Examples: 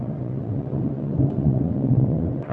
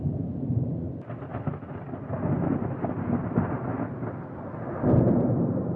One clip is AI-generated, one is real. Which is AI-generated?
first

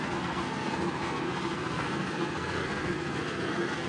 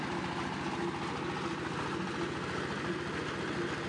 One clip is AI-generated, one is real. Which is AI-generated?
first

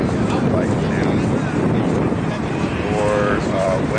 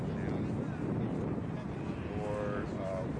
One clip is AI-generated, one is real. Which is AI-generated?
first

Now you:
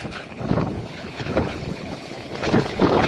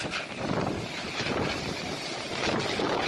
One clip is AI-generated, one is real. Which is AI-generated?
first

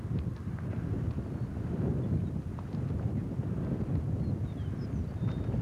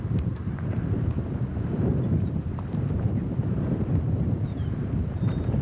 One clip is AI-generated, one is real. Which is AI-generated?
second